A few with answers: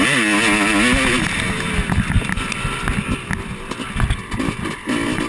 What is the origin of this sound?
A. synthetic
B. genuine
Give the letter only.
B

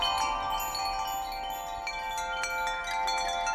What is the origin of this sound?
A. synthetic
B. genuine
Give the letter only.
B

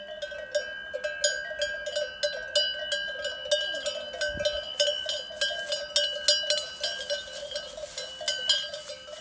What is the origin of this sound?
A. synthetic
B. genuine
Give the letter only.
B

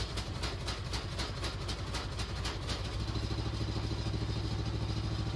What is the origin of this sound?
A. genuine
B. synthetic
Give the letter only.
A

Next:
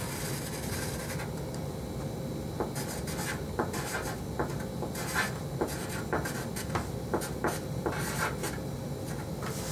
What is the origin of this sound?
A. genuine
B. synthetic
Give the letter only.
A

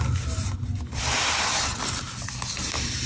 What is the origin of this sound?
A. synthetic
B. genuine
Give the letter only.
B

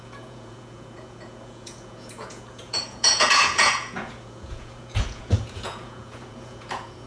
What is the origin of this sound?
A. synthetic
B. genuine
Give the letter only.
A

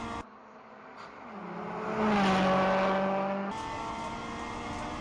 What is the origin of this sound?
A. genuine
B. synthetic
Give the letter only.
A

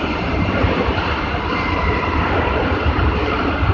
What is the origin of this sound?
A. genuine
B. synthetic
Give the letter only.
B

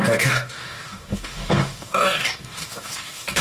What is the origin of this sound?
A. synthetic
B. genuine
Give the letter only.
A